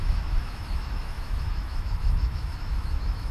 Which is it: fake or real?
fake